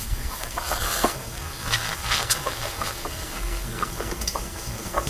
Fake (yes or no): yes